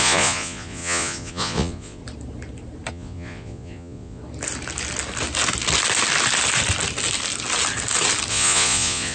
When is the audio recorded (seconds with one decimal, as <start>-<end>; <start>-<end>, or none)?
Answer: 2.0-2.9; 4.2-8.3